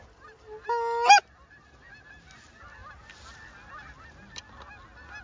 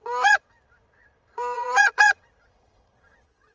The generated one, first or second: second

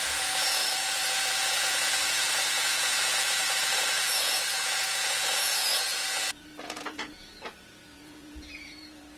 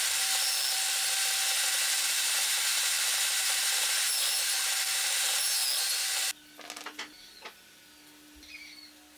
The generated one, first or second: first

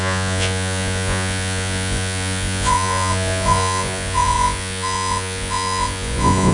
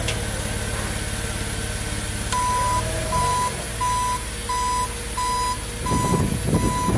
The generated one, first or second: first